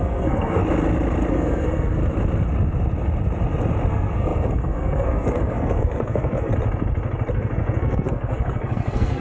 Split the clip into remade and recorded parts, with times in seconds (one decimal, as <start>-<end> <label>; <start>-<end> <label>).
0.0-0.6 remade; 0.6-1.3 recorded; 1.3-2.0 remade; 2.0-3.9 recorded; 3.9-6.5 remade; 6.5-7.3 recorded; 7.3-9.2 remade